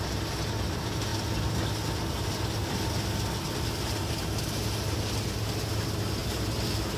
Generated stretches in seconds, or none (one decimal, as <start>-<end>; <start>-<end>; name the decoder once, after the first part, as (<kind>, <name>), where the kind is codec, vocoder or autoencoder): 6.2-7.0 (vocoder, BigVGAN v2)